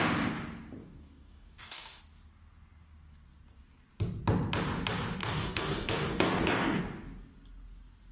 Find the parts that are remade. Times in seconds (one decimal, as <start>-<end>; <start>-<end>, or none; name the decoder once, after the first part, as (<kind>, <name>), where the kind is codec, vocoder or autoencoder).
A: 0.8-2.0 (codec, DAC); 5.2-6.8